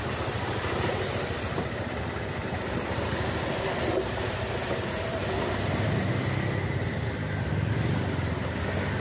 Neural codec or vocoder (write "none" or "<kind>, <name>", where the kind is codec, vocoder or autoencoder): none